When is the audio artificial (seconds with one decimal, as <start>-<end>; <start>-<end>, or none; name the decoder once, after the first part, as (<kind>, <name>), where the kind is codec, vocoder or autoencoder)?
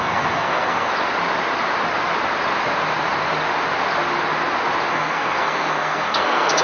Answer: 0.0-0.9 (codec, SNAC); 4.9-6.6